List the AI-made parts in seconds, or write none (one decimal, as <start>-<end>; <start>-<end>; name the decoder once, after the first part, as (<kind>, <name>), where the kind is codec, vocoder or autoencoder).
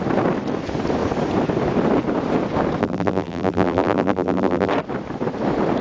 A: 2.8-4.7 (vocoder, BigVGAN v2)